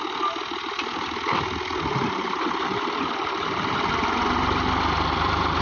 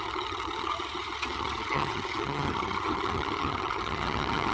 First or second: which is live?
first